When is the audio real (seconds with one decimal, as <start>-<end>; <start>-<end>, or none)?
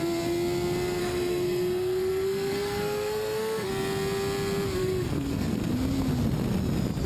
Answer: 0.0-1.0; 3.7-4.8; 5.7-7.1